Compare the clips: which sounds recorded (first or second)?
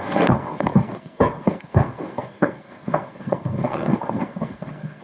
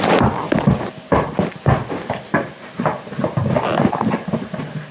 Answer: second